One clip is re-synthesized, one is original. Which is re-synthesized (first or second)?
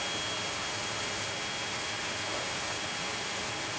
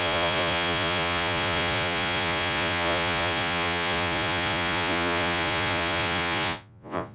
second